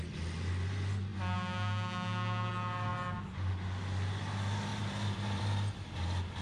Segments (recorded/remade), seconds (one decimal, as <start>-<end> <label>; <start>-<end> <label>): 0.0-6.4 recorded